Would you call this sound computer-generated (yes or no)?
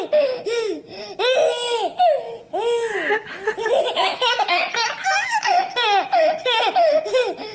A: yes